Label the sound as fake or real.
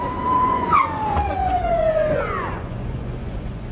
fake